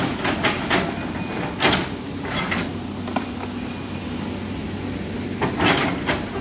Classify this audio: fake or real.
real